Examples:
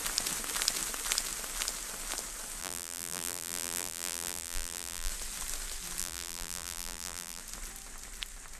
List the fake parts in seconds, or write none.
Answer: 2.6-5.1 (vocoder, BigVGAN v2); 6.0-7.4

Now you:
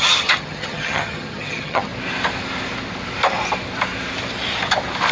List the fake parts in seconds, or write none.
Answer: 0.0-1.9 (vocoder, HiFi-GAN)